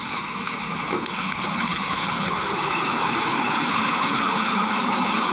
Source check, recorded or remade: remade